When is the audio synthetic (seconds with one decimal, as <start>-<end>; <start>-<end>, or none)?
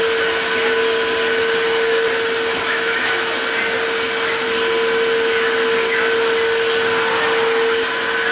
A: 2.5-3.3